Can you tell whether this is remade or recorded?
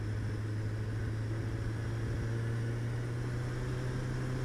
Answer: recorded